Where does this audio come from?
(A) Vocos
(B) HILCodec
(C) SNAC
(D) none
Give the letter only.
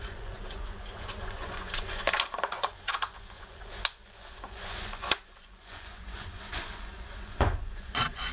A